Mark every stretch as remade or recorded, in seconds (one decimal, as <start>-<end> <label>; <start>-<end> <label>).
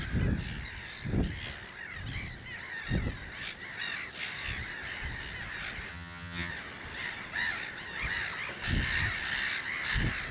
0.0-5.9 recorded; 5.9-6.5 remade; 6.5-10.3 recorded